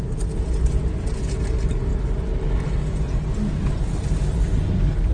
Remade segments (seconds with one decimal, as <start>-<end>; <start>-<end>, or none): none